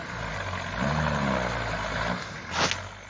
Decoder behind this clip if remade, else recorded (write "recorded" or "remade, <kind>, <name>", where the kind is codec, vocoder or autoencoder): recorded